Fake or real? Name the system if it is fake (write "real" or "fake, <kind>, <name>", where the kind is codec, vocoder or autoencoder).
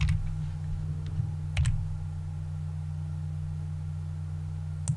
real